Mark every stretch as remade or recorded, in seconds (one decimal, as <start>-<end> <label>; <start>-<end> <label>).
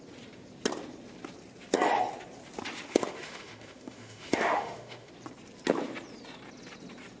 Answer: 0.0-2.9 recorded; 2.9-5.1 remade; 5.1-7.2 recorded